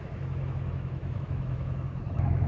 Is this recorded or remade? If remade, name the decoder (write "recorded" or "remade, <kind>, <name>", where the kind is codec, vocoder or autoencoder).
remade, autoencoder, DAC-VAE